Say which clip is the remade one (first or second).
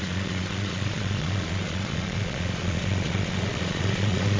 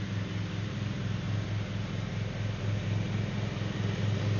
first